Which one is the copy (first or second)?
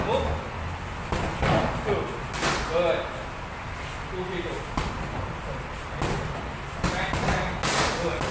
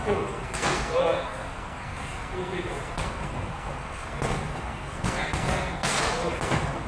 second